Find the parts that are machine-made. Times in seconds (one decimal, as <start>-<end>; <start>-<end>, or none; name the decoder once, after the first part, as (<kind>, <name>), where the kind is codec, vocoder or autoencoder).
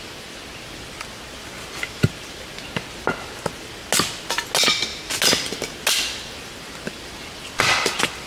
none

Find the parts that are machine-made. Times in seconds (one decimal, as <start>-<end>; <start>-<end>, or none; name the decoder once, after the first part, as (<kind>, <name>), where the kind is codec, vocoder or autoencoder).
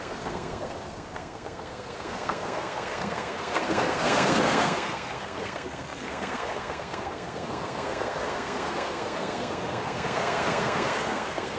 0.0-11.6 (codec, SNAC)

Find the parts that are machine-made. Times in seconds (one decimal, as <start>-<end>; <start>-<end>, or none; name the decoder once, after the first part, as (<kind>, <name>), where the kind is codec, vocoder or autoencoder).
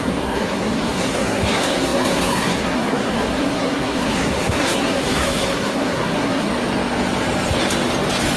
0.0-6.5 (codec, SNAC)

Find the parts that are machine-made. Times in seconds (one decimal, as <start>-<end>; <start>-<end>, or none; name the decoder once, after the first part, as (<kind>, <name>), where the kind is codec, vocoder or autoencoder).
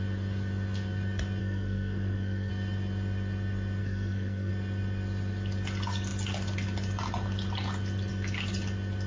1.4-2.5 (codec, SNAC); 3.8-4.5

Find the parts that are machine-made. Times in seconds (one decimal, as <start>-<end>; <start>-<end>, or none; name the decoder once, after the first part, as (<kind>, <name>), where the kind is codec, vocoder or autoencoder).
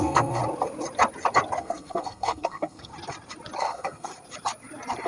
0.0-0.4 (codec, SNAC); 1.6-2.9; 3.6-4.1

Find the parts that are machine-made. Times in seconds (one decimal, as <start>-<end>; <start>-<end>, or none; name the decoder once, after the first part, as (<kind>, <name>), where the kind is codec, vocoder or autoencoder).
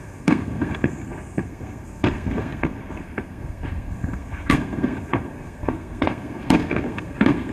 0.0-7.5 (codec, SNAC)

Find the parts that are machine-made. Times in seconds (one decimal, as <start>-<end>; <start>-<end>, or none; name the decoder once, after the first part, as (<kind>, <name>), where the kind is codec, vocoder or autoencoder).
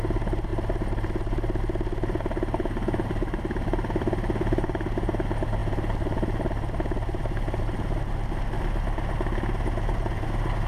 none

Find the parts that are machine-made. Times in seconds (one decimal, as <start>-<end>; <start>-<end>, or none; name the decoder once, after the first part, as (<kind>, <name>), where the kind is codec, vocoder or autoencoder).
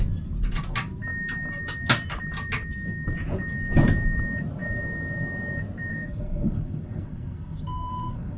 5.9-8.4 (codec, SNAC)